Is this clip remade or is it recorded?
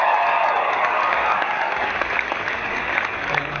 remade